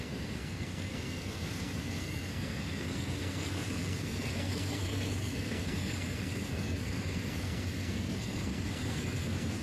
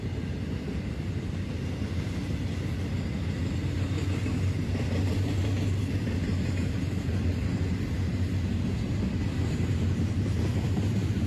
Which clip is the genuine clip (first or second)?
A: second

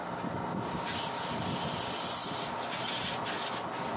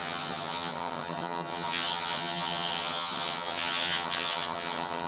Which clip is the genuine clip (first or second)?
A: first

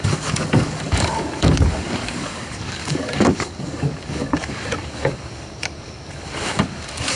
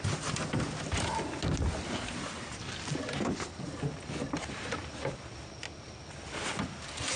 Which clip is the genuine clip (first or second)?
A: second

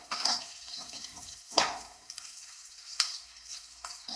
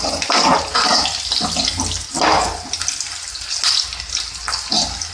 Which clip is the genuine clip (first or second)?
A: second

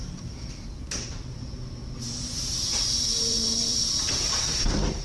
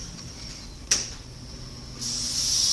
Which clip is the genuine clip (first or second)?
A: second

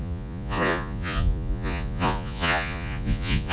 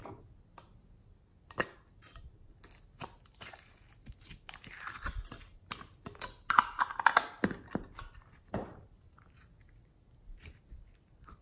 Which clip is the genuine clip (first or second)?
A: second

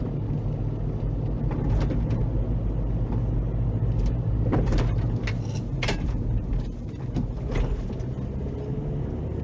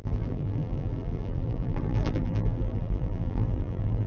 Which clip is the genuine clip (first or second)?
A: first